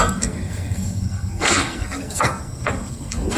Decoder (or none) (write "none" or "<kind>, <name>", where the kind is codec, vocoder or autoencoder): codec, SNAC